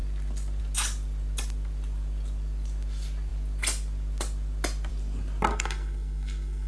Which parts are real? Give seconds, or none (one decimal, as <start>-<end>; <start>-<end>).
0.0-5.5